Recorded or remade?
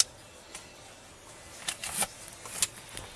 recorded